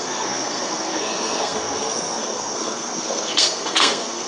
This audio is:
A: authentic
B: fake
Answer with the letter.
B